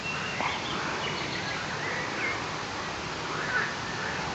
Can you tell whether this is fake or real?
real